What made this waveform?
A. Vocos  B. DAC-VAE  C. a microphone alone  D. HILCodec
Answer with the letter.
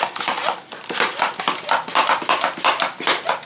C